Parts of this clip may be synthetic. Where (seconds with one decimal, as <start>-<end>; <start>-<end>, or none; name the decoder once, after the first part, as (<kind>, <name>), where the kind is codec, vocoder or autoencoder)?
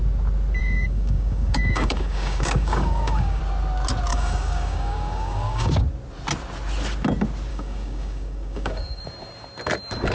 0.6-3.4 (codec, DAC); 4.1-5.7; 7.5-9.0